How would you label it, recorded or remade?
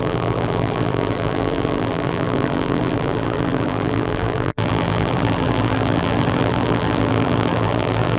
remade